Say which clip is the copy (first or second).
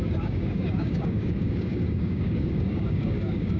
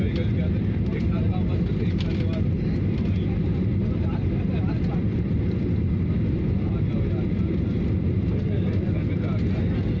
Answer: first